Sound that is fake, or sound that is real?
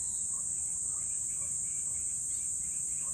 real